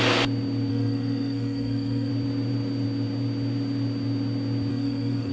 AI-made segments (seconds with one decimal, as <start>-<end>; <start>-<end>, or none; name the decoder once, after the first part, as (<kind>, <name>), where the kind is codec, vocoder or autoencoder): 0.7-2.1 (codec, SNAC); 4.7-5.3